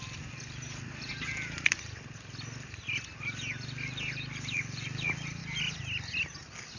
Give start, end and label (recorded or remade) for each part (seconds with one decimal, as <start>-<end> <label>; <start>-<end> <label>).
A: 0.0-6.8 recorded